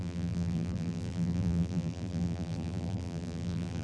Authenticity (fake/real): fake